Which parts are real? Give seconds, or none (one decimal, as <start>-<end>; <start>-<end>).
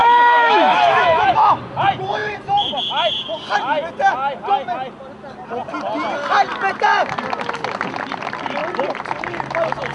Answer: 1.6-9.9